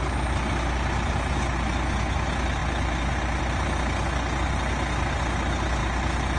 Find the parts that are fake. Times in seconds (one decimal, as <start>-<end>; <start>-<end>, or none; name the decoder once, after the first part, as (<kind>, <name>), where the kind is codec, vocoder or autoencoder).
none